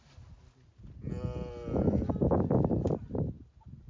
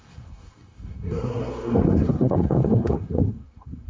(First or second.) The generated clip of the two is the second